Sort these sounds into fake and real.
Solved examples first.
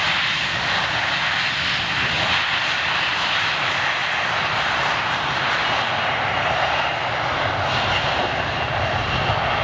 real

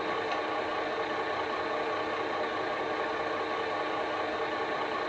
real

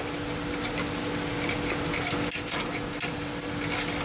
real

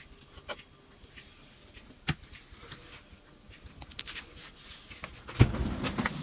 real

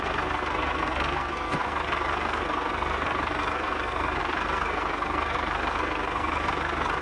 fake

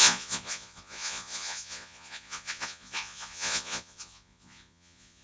fake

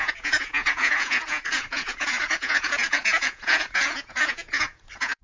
fake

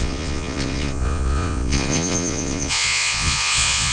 fake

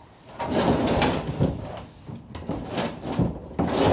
real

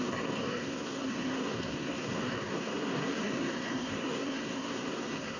fake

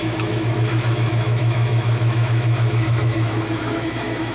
fake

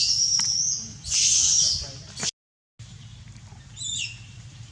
real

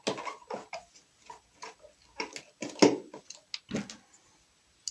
real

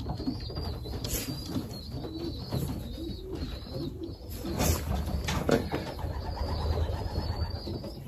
real